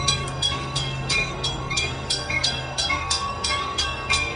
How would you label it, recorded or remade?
remade